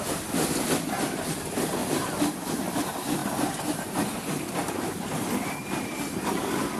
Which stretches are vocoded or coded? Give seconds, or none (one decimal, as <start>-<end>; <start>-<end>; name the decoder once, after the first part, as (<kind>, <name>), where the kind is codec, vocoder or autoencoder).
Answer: 1.8-2.6 (vocoder, BigVGAN v2); 3.2-6.2